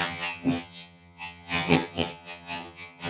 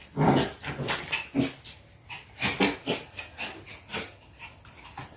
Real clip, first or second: second